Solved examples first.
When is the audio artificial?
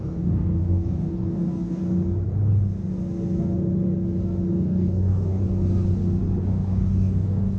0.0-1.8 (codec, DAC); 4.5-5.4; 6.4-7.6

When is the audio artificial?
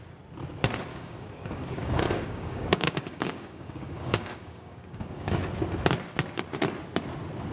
0.9-5.4 (codec, DAC)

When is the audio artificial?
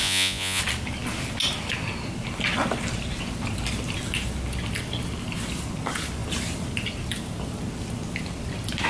0.0-0.6 (vocoder, Vocos)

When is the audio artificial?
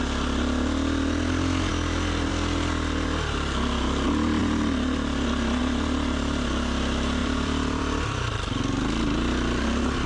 7.2-8.2 (vocoder, BigVGAN v2)